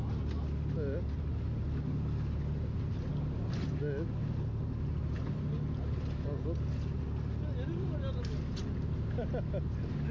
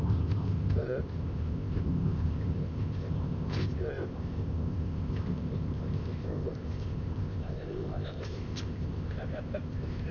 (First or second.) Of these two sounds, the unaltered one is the first